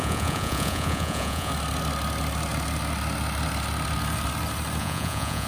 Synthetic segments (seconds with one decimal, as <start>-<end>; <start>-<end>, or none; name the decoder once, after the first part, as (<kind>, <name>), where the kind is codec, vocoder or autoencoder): 0.0-1.5 (vocoder, Vocos); 4.8-5.5